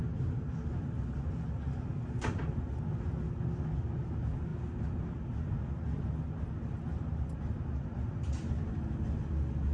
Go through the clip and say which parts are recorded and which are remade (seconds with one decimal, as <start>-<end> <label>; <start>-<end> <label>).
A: 0.0-9.7 recorded